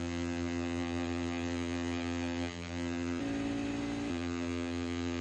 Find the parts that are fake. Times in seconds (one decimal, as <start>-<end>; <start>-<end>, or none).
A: 0.0-3.2; 4.1-5.2